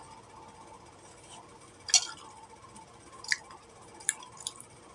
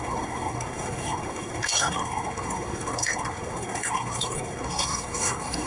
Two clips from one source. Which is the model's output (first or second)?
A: second